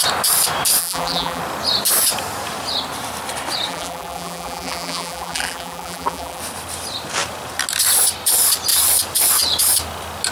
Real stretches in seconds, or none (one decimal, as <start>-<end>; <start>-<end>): 0.0-0.8; 1.4-3.7; 6.4-10.3

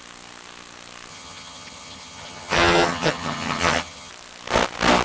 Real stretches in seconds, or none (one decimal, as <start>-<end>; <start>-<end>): 0.0-1.1; 4.1-5.0

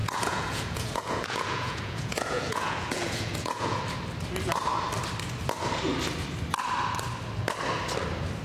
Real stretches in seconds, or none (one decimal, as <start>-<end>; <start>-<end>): 3.8-8.4

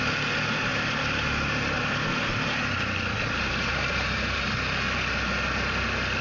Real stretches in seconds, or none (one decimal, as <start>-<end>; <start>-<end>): 0.0-0.7; 4.4-6.2

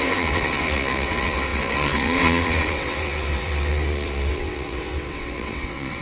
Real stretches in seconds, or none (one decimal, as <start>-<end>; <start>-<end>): none

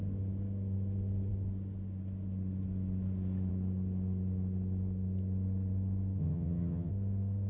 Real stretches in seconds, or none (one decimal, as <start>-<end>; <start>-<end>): 0.0-6.2; 6.9-7.5

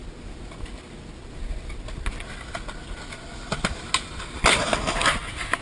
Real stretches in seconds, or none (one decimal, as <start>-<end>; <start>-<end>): 0.0-5.6